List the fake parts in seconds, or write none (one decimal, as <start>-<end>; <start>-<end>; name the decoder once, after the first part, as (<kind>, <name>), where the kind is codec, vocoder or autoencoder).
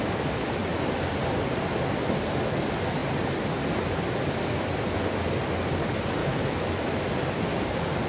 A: 6.2-7.0 (autoencoder, DAC-VAE)